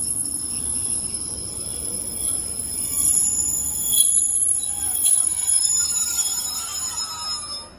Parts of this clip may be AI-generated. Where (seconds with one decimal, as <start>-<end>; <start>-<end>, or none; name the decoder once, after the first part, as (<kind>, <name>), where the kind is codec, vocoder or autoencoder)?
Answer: none